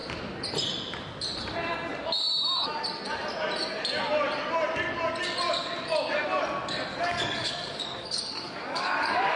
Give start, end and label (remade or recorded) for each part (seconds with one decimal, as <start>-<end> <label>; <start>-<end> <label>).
0.0-6.9 recorded; 6.9-9.4 remade